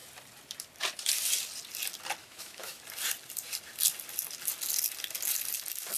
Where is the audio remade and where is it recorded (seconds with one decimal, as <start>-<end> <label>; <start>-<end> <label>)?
0.0-2.2 recorded; 2.2-2.8 remade; 2.8-6.0 recorded